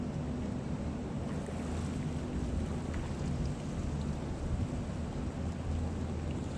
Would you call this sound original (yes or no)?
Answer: yes